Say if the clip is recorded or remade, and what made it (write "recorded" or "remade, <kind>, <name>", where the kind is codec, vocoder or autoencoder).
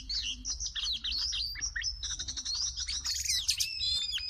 recorded